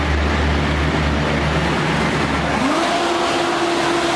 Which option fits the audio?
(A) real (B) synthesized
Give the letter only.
A